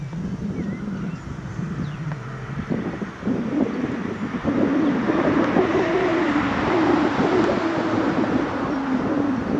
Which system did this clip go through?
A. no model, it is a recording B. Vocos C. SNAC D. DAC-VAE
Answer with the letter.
A